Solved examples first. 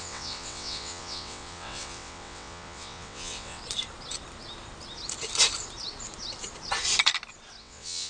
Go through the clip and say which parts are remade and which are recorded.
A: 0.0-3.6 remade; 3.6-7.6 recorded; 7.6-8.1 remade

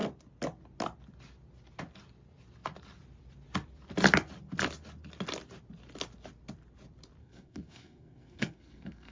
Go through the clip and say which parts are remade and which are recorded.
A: 0.0-7.2 recorded; 7.2-9.1 remade

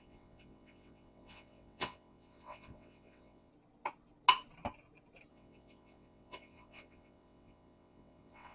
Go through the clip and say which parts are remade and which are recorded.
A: 0.0-3.5 remade; 3.5-5.3 recorded; 5.3-8.5 remade